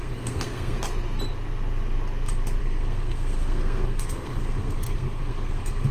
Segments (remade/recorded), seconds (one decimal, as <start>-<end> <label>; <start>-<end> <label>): 0.0-0.8 remade; 0.8-2.6 recorded; 2.6-5.9 remade